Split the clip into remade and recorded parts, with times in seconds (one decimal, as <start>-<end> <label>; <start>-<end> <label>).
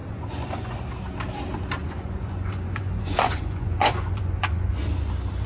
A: 0.0-0.8 remade; 0.8-1.8 recorded; 1.8-5.1 remade; 5.1-5.5 recorded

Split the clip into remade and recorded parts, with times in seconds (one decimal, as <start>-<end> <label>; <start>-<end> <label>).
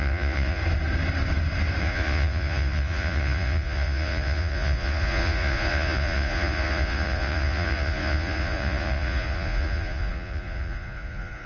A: 0.0-0.6 remade; 0.6-1.8 recorded; 1.8-11.5 remade